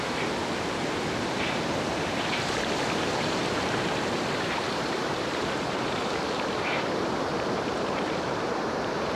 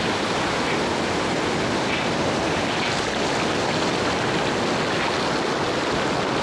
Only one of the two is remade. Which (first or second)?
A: first